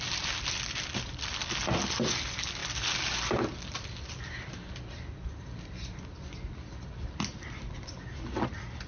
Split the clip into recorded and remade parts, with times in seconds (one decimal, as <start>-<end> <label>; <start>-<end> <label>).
0.0-8.9 recorded